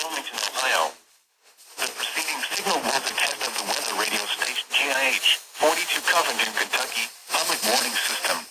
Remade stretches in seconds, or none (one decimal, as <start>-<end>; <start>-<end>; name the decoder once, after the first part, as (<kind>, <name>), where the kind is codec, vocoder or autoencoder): 7.2-7.8 (vocoder, BigVGAN v2)